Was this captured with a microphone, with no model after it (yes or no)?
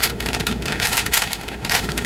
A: no